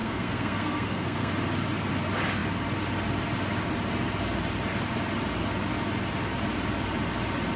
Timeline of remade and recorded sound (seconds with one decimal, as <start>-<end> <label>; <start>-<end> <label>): 0.0-1.3 remade; 1.3-7.6 recorded

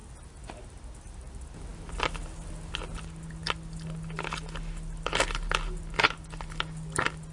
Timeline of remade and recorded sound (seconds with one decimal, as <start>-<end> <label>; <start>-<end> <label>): 0.0-7.3 recorded